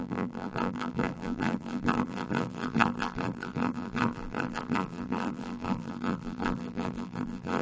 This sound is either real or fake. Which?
fake